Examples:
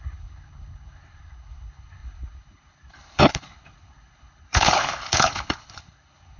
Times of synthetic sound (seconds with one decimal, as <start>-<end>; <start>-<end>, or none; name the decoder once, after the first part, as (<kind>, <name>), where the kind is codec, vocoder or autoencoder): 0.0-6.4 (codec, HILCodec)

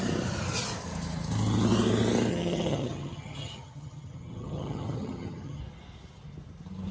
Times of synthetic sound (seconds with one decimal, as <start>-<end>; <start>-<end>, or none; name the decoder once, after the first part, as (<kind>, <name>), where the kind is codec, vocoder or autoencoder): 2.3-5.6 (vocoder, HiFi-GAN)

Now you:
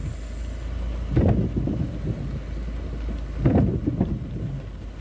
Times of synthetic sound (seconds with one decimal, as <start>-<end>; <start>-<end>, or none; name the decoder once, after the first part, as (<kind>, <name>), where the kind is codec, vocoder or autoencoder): none

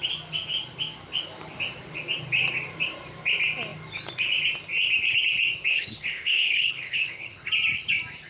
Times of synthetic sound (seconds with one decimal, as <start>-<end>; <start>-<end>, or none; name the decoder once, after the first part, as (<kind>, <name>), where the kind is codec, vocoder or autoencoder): 5.7-7.5 (codec, HILCodec)

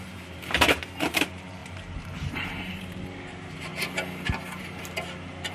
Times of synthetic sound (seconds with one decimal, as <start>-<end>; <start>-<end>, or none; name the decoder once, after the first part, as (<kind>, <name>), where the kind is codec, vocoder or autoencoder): 0.0-3.7 (vocoder, BigVGAN v2); 4.6-5.5

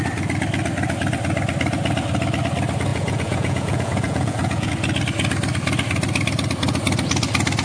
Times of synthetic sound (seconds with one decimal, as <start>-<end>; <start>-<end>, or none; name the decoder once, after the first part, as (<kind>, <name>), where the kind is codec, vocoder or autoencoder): 2.9-4.7 (vocoder, Vocos)

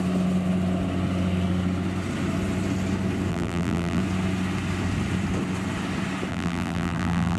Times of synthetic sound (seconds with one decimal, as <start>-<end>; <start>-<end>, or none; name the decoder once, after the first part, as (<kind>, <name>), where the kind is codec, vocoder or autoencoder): 3.3-4.0 (vocoder, BigVGAN v2); 6.3-7.4